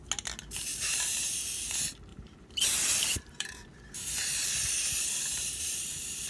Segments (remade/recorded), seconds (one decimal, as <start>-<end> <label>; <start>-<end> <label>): 0.0-0.7 recorded; 0.7-1.4 remade; 1.4-2.1 recorded; 2.1-4.5 remade; 4.5-5.3 recorded; 5.3-6.3 remade